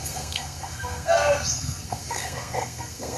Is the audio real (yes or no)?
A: no